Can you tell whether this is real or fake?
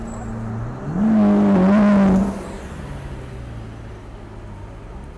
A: real